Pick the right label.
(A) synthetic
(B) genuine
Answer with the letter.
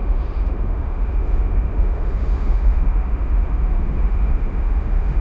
A